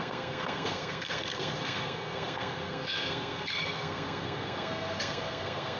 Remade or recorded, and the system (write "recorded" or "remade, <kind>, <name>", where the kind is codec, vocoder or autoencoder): remade, codec, SNAC